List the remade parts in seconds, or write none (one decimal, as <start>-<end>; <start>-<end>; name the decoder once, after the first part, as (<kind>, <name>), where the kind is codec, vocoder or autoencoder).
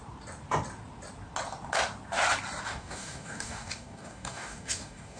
2.7-5.2 (codec, DAC)